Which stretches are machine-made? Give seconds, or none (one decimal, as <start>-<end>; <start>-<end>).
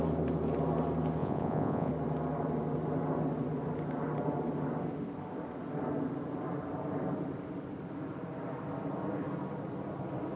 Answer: 1.2-1.9